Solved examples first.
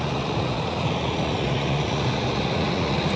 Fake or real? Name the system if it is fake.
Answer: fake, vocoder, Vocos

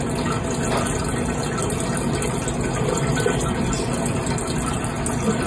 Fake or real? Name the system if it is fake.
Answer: real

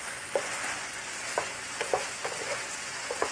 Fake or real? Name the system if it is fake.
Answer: fake, vocoder, Vocos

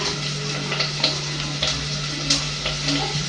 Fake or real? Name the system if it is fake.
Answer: real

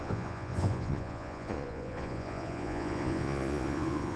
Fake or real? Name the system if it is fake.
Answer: fake, vocoder, Vocos